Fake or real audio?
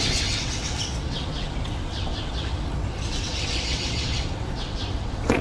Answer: fake